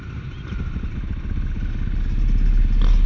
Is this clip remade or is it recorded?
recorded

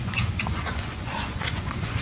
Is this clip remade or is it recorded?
remade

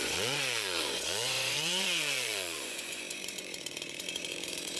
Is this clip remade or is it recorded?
remade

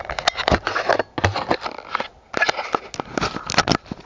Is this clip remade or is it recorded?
recorded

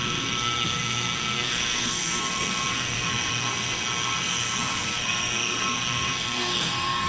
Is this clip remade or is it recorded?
remade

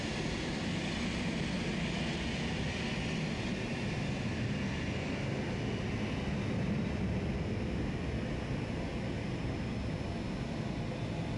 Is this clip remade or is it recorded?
recorded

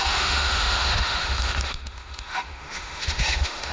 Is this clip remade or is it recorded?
remade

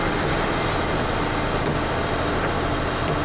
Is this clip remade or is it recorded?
recorded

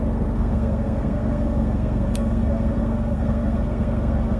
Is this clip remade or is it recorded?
remade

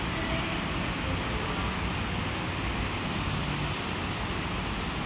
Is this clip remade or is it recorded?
recorded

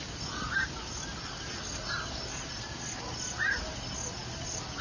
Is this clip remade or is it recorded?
recorded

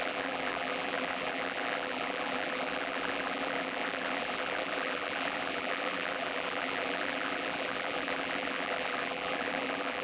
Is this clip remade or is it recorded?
remade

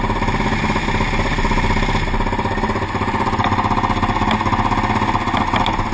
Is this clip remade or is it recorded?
recorded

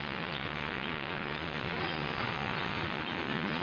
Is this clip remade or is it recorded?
remade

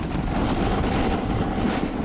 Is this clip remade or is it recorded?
recorded